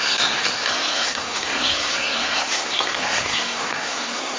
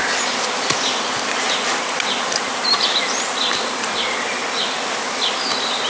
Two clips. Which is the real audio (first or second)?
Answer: second